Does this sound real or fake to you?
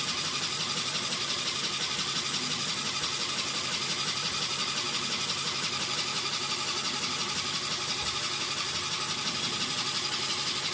real